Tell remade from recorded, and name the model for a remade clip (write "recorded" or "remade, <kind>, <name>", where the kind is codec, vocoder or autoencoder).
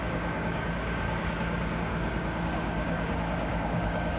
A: remade, codec, DAC